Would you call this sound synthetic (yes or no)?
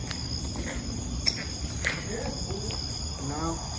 no